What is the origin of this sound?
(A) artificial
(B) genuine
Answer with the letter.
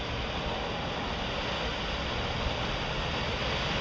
B